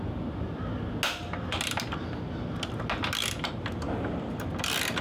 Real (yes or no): yes